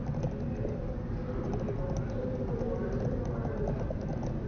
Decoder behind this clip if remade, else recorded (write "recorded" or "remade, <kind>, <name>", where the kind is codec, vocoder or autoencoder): recorded